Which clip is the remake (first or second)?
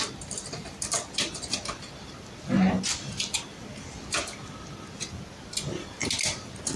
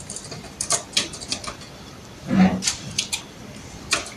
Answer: second